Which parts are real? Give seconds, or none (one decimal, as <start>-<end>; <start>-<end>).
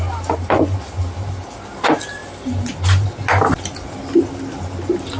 0.0-5.2